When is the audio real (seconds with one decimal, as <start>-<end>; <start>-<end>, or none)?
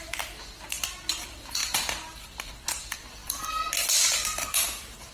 1.6-2.5